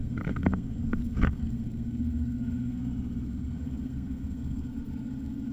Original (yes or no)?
no